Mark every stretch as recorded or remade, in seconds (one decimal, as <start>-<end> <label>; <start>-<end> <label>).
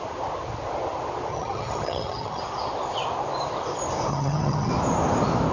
0.0-1.3 recorded; 1.3-2.4 remade; 2.4-4.1 recorded; 4.1-4.7 remade; 4.7-5.5 recorded